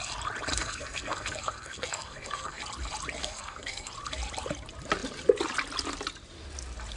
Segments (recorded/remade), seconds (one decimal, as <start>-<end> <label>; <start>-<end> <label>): 0.0-0.5 recorded; 0.5-2.6 remade; 2.6-3.2 recorded; 3.2-3.9 remade; 3.9-7.0 recorded